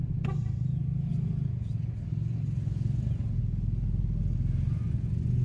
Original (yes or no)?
yes